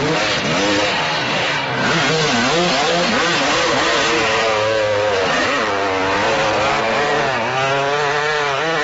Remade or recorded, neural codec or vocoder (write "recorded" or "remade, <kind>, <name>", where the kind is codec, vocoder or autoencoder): recorded